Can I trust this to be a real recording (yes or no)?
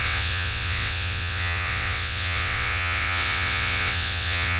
no